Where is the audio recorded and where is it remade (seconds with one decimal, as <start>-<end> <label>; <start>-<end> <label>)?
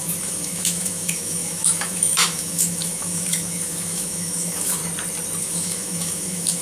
0.0-4.8 remade; 4.8-5.4 recorded; 5.4-6.6 remade